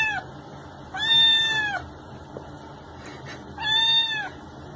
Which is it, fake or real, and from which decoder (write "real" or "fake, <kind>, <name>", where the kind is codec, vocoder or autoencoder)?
real